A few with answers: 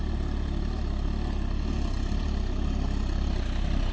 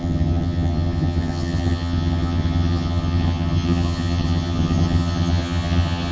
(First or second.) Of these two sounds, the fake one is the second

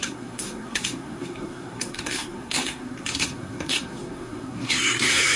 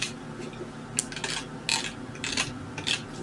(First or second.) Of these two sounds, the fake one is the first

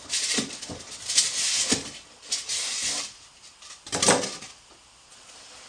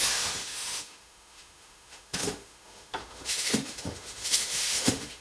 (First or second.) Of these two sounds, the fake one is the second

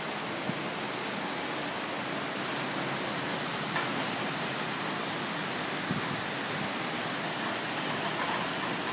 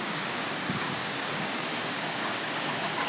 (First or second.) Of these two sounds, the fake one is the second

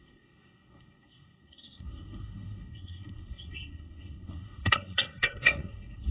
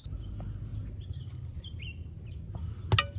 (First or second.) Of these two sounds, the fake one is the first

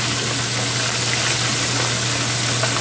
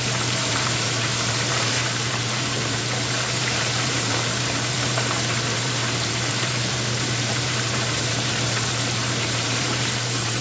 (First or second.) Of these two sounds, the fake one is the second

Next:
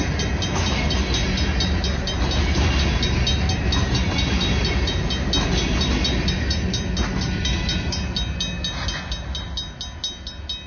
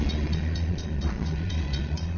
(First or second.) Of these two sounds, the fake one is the second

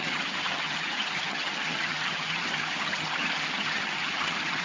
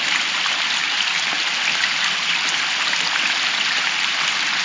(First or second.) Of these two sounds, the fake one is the first